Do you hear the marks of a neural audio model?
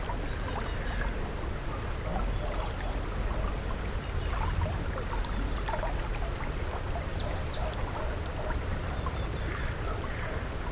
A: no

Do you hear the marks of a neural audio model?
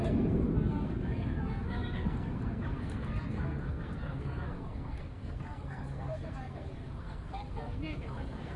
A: yes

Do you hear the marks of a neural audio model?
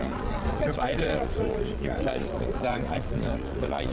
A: yes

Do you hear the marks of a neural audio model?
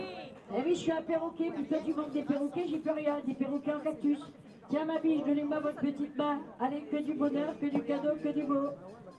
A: no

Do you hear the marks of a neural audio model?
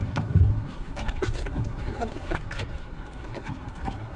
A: yes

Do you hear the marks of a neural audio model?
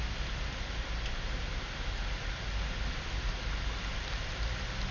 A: no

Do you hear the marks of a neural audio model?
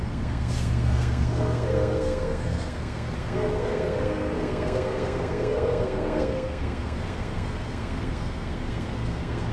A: yes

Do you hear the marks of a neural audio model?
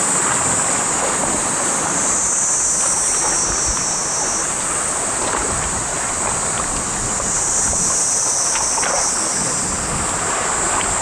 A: no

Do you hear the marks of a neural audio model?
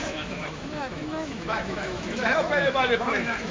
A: yes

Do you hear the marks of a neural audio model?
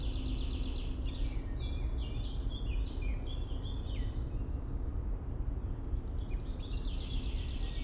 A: no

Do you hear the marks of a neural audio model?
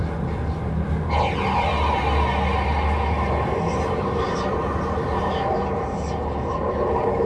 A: no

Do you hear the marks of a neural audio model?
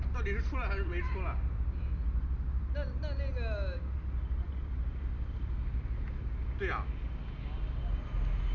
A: no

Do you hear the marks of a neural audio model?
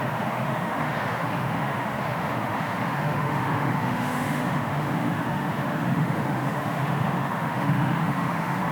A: yes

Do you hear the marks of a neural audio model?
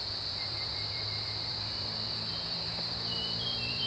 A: yes